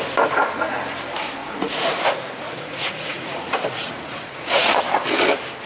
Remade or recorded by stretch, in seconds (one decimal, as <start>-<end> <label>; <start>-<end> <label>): 0.0-1.4 recorded; 1.4-4.8 remade; 4.8-5.7 recorded